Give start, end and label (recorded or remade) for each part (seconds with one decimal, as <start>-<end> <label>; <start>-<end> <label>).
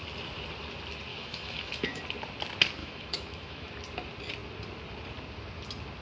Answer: 0.0-1.1 recorded; 1.1-2.0 remade; 2.0-2.8 recorded; 2.8-3.7 remade; 3.7-6.0 recorded